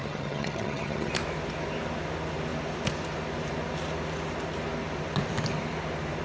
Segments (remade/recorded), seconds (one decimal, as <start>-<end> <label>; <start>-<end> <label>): 0.0-1.1 remade; 1.1-6.2 recorded